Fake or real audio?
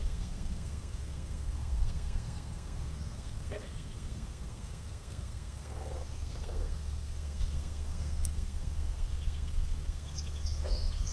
fake